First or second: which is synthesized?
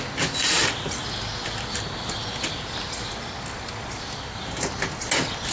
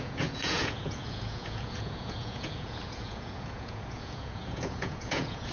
second